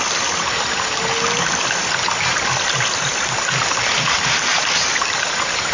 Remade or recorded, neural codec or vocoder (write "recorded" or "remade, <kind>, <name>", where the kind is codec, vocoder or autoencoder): recorded